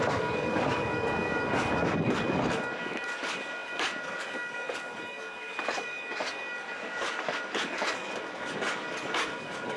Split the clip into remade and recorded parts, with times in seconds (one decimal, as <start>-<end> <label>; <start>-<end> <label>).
0.0-9.8 remade